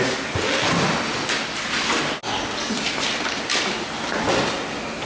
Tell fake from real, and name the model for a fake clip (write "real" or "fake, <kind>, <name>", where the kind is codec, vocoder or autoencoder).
real